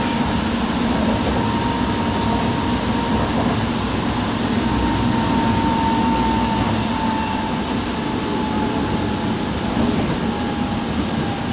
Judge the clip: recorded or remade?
recorded